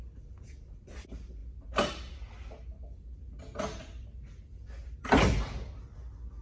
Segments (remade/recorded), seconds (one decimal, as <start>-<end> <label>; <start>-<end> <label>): 0.0-6.4 recorded